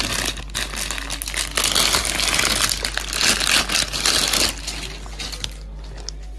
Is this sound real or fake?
real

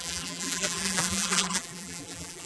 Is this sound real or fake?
fake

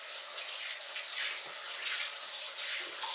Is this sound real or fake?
real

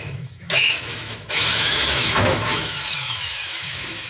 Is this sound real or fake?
fake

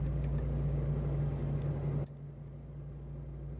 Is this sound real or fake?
real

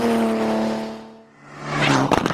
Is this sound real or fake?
real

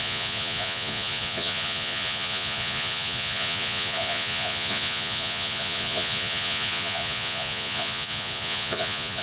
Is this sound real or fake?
fake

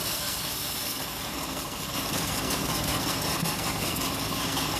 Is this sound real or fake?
fake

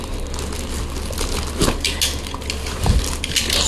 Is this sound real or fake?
real